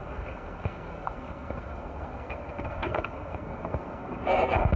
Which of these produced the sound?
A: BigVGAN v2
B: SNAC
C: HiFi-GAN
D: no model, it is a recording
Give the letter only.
B